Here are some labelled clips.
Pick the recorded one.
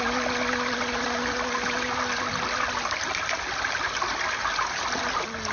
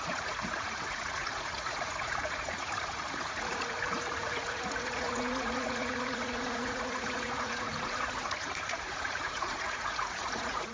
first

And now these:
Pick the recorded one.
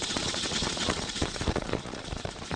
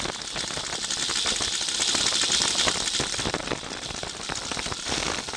second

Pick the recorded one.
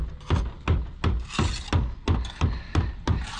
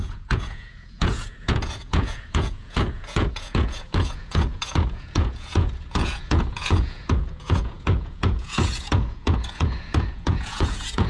first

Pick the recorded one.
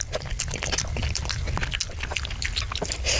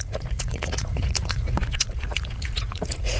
first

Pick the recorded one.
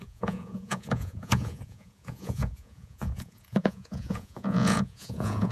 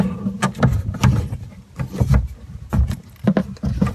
second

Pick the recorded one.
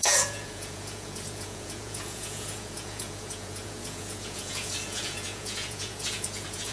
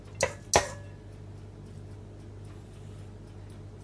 second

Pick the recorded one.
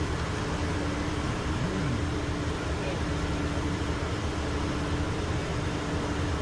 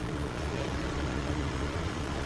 first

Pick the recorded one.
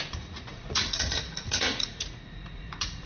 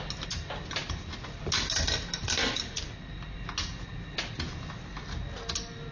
second